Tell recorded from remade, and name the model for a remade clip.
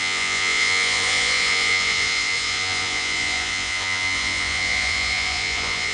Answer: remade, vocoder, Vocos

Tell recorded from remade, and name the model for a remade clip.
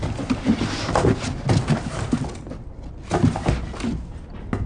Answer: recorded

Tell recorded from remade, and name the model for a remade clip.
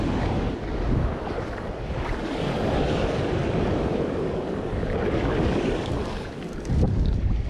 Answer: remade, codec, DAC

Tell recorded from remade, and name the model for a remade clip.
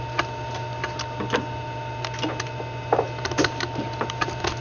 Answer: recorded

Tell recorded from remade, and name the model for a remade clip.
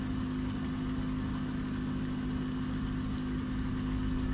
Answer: recorded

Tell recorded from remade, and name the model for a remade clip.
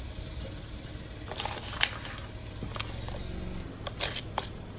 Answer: recorded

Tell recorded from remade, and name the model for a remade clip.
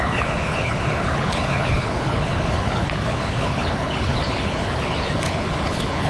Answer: remade, codec, HILCodec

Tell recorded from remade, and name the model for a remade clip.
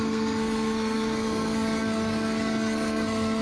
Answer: remade, codec, SNAC